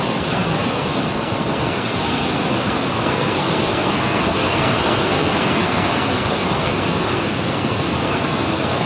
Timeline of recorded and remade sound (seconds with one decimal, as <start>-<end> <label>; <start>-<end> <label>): 0.0-8.9 remade